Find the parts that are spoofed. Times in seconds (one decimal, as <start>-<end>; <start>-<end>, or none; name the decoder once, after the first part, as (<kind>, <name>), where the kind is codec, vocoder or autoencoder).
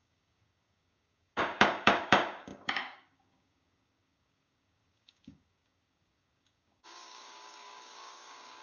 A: 0.0-8.6 (codec, DAC)